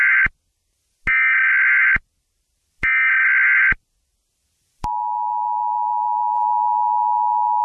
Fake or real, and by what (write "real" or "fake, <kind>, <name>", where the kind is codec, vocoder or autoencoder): real